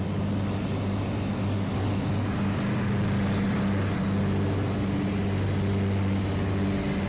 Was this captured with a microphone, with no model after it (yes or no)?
yes